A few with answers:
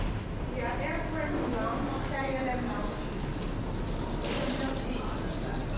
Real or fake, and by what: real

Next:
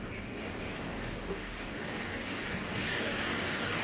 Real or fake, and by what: fake, codec, DAC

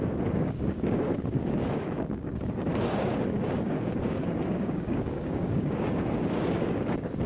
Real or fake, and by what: fake, codec, DAC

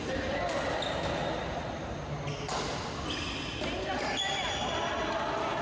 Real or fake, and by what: real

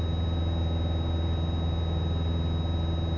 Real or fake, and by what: real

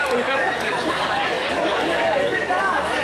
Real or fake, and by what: fake, codec, DAC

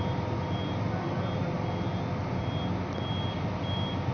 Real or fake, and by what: real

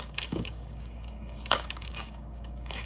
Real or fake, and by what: fake, codec, DAC